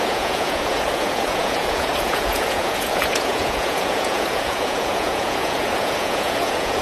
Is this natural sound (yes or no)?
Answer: no